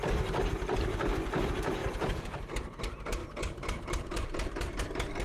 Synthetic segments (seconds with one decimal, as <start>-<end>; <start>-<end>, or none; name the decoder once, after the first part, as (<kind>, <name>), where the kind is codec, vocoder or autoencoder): 1.8-2.8 (vocoder, BigVGAN v2); 3.2-4.8

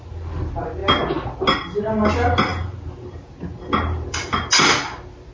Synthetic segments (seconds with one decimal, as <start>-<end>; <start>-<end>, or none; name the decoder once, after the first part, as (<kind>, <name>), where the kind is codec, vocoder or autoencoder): none